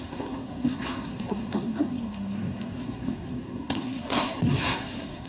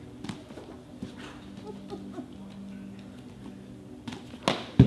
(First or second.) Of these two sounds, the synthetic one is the first